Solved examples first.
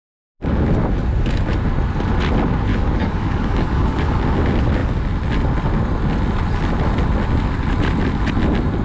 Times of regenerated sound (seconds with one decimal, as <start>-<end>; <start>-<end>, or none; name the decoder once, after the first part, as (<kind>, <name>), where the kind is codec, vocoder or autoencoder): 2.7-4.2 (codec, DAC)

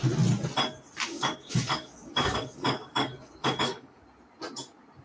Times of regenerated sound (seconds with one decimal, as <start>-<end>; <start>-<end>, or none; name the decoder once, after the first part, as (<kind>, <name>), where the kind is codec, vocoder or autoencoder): 1.1-4.0 (codec, DAC)

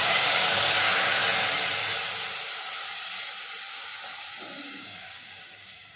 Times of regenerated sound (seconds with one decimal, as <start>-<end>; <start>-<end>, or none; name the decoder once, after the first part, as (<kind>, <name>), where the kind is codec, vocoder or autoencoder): 0.0-1.2 (codec, DAC); 4.8-6.0